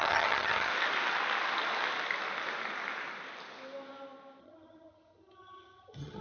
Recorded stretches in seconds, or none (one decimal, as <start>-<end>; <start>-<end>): 0.7-4.4